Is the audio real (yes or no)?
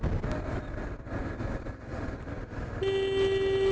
yes